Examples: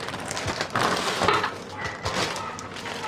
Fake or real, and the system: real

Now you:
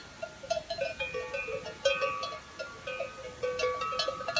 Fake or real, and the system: real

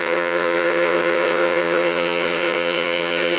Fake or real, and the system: fake, vocoder, HiFi-GAN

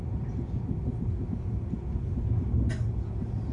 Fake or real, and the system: real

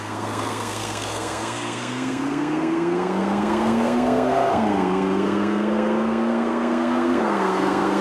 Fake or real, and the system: fake, codec, SNAC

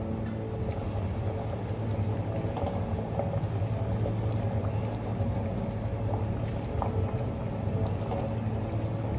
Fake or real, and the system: real